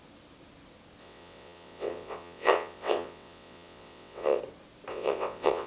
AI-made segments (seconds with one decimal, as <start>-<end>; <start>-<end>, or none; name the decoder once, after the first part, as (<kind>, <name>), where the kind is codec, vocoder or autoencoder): 1.0-4.4 (vocoder, WaveNeXt); 4.9-5.7